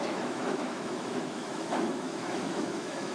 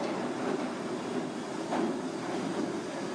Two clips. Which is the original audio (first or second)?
second